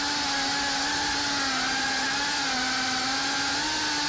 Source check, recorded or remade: recorded